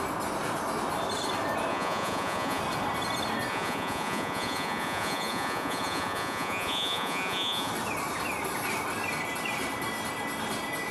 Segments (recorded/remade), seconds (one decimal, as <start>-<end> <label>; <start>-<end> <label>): 0.0-1.7 recorded; 1.7-2.6 remade; 2.6-3.5 recorded; 3.5-7.7 remade; 7.7-10.9 recorded